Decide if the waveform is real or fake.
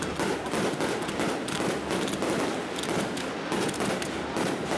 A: real